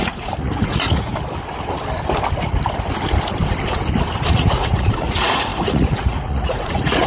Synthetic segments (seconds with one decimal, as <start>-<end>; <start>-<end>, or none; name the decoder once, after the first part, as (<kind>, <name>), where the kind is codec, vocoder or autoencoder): 0.0-1.1 (vocoder, Vocos); 4.3-7.1